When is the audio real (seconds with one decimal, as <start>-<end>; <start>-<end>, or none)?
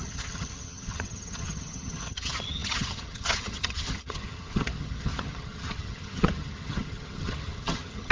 none